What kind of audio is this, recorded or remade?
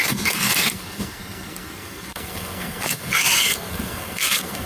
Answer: remade